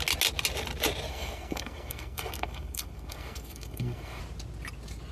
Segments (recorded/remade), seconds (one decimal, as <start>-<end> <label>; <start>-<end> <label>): 0.0-1.1 recorded; 1.1-4.2 remade; 4.2-5.1 recorded